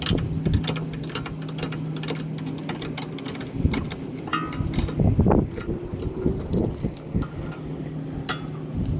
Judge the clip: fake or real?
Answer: real